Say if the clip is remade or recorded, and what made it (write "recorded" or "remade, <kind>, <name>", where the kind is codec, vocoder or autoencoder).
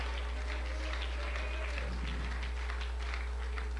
recorded